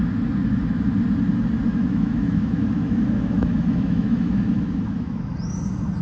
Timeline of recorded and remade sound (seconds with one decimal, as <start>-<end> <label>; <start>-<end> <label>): 0.0-1.7 recorded; 1.7-5.3 remade; 5.3-6.0 recorded